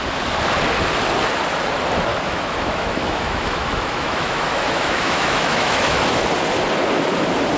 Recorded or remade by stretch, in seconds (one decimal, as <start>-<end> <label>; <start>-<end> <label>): 0.0-2.1 recorded; 2.1-6.2 remade; 6.2-7.6 recorded